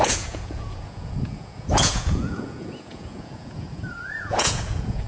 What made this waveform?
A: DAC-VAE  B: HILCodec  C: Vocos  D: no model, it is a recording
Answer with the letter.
C